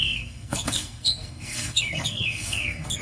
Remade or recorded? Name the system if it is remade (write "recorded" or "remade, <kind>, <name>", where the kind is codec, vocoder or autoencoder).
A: remade, codec, SNAC